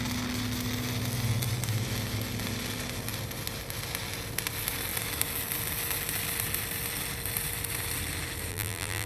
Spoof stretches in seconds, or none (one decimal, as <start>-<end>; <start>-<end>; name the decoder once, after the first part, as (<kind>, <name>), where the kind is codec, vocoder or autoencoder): 8.5-9.1 (vocoder, BigVGAN v2)